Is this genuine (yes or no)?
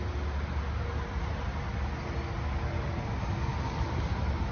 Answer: yes